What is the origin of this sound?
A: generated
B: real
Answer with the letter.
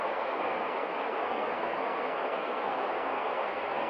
A